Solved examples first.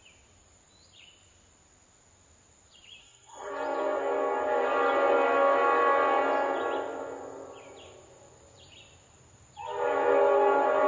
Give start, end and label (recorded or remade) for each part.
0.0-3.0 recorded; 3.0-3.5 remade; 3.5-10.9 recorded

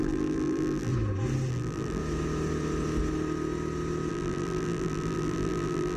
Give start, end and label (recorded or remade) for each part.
0.0-0.9 remade; 0.9-1.5 recorded; 1.5-2.0 remade; 2.0-4.1 recorded; 4.1-6.0 remade

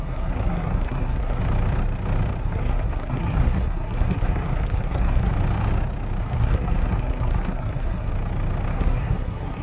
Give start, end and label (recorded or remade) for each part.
0.0-1.4 remade; 1.4-2.4 recorded; 2.4-5.3 remade; 5.3-6.2 recorded; 6.2-8.1 remade; 8.1-8.7 recorded; 8.7-9.6 remade

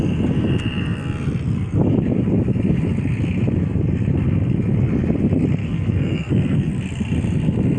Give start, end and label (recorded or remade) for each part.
0.0-5.6 recorded; 5.6-6.7 remade; 6.7-7.8 recorded